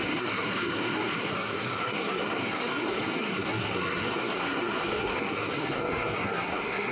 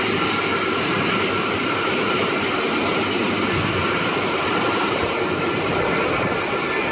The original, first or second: second